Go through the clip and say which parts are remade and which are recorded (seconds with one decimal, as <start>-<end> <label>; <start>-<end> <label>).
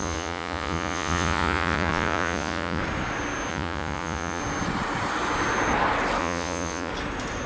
0.0-2.8 remade; 2.8-3.5 recorded; 3.5-4.4 remade; 4.4-6.2 recorded; 6.2-6.9 remade; 6.9-7.5 recorded